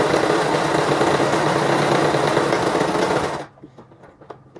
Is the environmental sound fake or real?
real